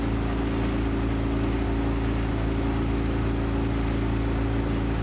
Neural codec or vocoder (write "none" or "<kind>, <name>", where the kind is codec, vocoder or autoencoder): none